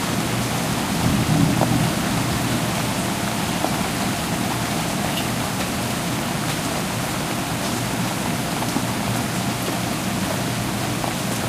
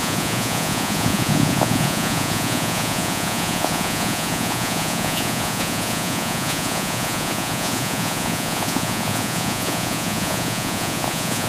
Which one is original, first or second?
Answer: first